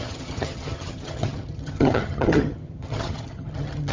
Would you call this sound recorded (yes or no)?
no